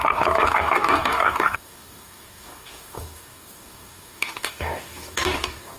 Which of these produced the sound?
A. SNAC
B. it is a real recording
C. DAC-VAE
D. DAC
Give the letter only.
D